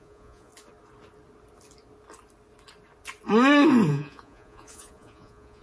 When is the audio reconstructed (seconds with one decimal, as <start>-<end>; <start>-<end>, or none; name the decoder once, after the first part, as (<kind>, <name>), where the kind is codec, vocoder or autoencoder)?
0.0-0.5 (vocoder, Vocos); 3.9-5.6